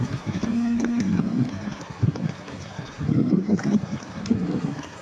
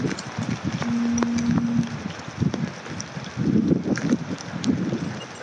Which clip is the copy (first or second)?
first